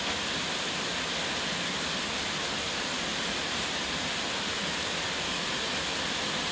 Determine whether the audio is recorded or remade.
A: recorded